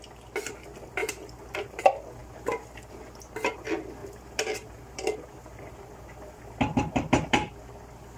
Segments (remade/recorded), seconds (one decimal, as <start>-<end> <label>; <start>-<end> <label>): 0.0-1.0 recorded; 1.0-1.8 remade; 1.8-4.0 recorded; 4.0-7.6 remade; 7.6-8.2 recorded